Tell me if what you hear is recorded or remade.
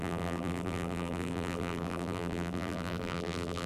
remade